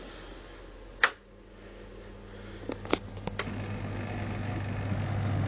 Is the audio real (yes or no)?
yes